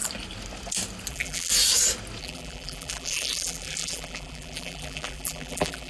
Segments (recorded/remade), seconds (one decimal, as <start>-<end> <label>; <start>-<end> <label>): 0.0-1.1 recorded; 1.1-1.5 remade; 1.5-2.2 recorded; 2.2-5.9 remade